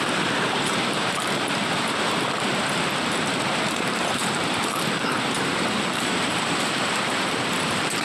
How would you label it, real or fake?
fake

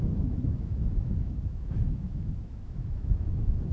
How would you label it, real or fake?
fake